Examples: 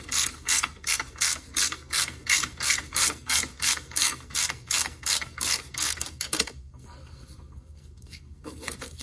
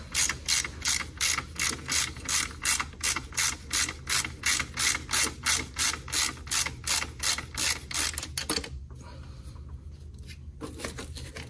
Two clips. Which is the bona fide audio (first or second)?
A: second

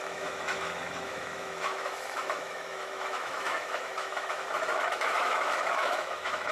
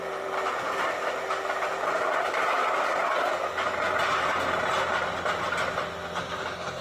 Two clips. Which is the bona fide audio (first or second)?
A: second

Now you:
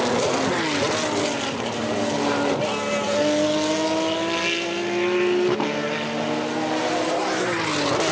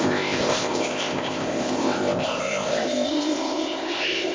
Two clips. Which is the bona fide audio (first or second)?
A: first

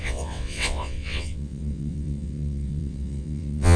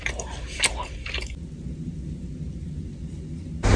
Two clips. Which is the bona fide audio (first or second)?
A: second